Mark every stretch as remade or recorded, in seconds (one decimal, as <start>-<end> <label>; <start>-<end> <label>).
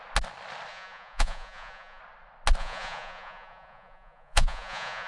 0.0-0.7 recorded; 0.7-2.0 remade; 2.0-2.6 recorded; 2.6-5.1 remade